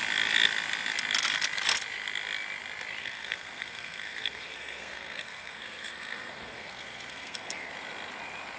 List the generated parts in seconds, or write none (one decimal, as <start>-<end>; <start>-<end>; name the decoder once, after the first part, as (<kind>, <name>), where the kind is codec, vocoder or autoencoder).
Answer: 3.0-7.7 (codec, SNAC)